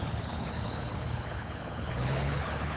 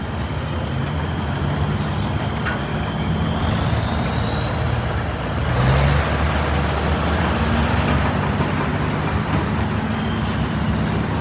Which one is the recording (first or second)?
second